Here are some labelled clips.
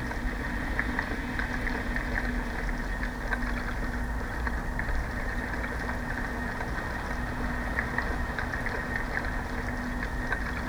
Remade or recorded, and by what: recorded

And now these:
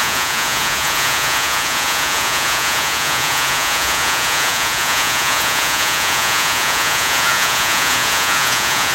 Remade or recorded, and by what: remade, vocoder, Vocos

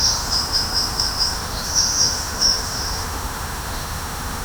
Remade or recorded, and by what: remade, autoencoder, DAC-VAE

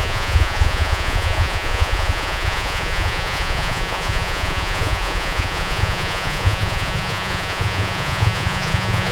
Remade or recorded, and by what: remade, vocoder, Vocos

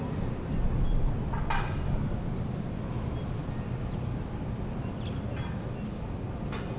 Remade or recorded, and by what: recorded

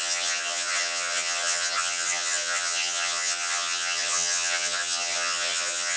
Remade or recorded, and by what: remade, vocoder, HiFi-GAN